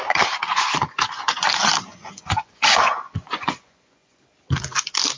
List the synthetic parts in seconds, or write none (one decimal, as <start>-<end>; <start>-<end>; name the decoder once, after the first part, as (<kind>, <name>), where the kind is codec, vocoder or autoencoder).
0.5-1.5 (vocoder, Vocos); 1.9-4.2